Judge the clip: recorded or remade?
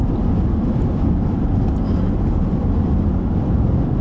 recorded